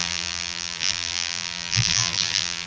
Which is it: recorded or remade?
remade